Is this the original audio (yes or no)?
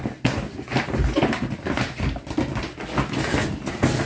yes